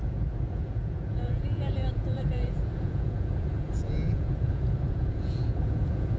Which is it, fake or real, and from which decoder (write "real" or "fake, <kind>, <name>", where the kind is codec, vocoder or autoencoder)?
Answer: fake, vocoder, Vocos